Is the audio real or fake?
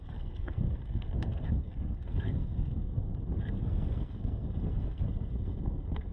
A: fake